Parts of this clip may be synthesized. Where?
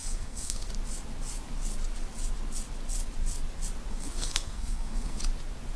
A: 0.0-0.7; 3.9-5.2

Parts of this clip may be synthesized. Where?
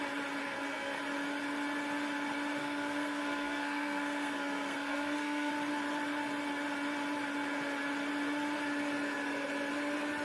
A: 0.4-1.0; 2.6-5.5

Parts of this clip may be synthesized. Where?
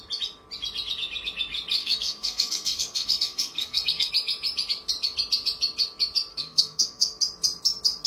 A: 1.8-4.1; 6.3-7.2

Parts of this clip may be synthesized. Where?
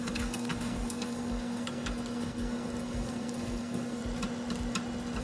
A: 0.0-4.0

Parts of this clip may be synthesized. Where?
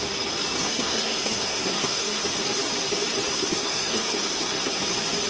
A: 0.6-2.2; 3.3-4.8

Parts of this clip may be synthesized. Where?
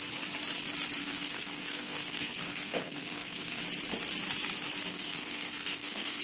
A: 1.0-3.6; 4.9-6.2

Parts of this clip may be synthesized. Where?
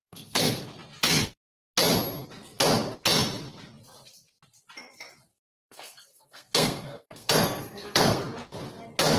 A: 0.0-0.6; 5.3-8.2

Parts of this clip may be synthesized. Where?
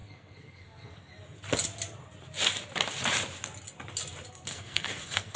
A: 0.0-1.1; 4.3-5.4